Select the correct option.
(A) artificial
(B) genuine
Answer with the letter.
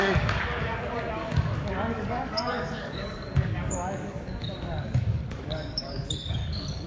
A